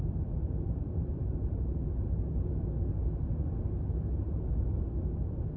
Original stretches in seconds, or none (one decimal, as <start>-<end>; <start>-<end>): 1.2-4.6